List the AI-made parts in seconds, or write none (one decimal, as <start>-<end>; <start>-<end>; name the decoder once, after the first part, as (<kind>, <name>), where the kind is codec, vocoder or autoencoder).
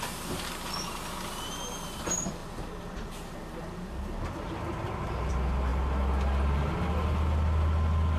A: 2.4-5.3 (vocoder, BigVGAN v2)